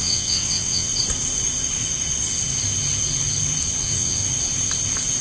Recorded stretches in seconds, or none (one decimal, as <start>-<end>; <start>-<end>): 0.9-3.8; 4.2-5.2